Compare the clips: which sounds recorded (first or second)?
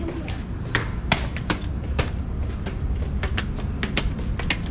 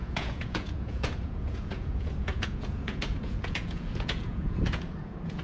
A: first